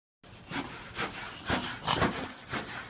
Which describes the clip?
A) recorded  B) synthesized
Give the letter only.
A